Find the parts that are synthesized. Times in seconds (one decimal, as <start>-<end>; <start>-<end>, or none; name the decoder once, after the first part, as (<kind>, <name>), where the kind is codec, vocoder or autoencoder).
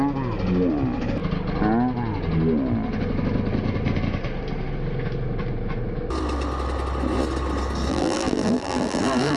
7.9-9.4 (vocoder, BigVGAN v2)